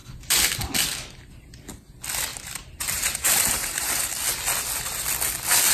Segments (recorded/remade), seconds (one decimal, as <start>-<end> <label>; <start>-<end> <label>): 0.0-2.3 recorded; 2.3-3.9 remade; 3.9-5.7 recorded